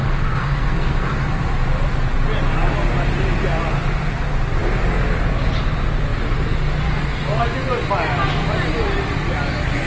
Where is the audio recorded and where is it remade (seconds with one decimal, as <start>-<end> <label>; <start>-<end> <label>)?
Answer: 0.0-1.5 remade; 1.5-9.9 recorded